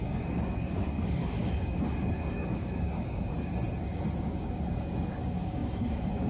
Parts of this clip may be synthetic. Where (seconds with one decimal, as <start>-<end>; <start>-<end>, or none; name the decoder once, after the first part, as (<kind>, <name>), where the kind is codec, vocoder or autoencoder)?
0.0-3.5 (codec, DAC); 4.2-6.3